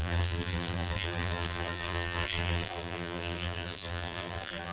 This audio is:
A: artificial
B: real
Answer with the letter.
A